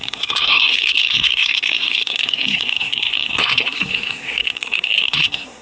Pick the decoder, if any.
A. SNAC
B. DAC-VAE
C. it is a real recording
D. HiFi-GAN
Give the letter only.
A